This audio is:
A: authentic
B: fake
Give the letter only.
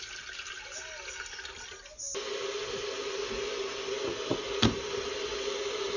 A